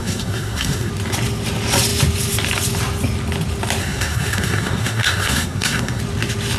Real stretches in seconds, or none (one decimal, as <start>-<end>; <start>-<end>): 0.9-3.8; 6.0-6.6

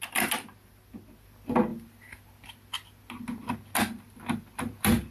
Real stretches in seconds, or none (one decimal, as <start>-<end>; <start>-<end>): 0.0-5.1

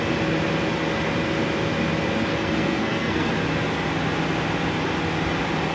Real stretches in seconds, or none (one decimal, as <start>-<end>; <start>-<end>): 0.0-2.3; 3.3-5.7

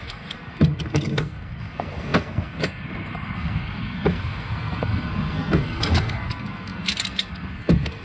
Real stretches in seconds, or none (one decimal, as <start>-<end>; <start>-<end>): none